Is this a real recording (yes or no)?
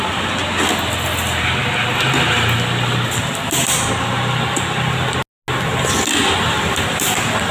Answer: yes